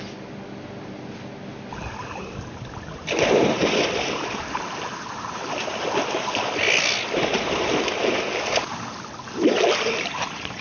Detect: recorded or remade recorded